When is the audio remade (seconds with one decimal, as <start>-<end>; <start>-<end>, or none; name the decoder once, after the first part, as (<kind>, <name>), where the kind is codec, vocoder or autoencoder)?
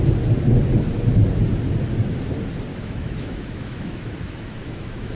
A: 2.7-5.2 (autoencoder, DAC-VAE)